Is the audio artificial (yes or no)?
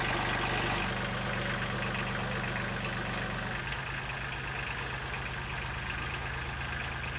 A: no